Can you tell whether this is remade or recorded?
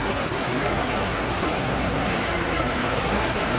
remade